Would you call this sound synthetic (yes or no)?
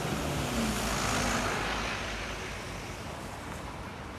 no